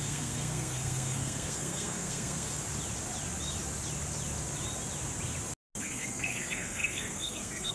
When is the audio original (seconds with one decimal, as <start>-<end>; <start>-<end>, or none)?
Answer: 2.6-5.8